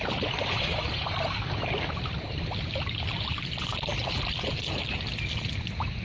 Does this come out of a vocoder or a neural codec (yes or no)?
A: no